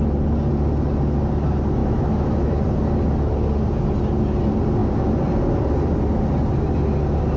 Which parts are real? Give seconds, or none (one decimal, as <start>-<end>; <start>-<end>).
0.0-1.8; 2.6-7.4

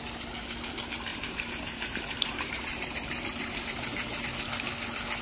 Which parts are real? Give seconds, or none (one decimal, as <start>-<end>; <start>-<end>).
0.0-1.1; 4.2-5.2